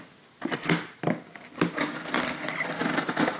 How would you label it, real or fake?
real